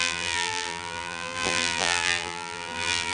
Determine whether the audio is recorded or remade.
remade